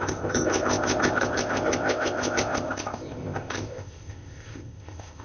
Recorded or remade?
remade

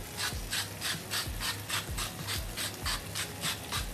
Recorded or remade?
recorded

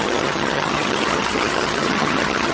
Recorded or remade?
remade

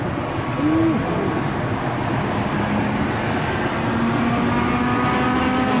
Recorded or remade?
recorded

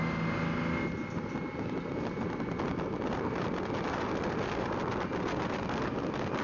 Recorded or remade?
recorded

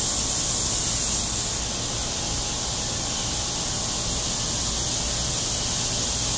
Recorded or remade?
recorded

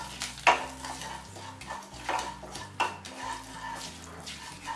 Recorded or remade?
recorded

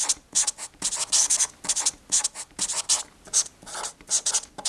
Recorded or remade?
recorded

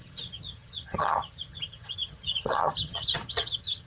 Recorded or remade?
remade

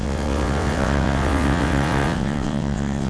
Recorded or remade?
remade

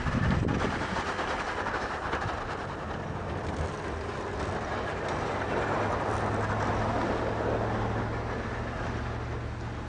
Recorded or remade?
recorded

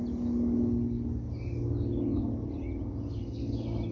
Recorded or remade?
recorded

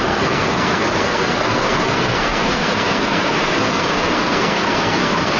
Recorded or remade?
remade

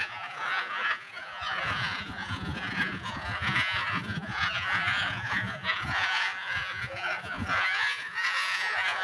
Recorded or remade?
remade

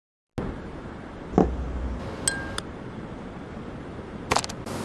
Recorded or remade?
recorded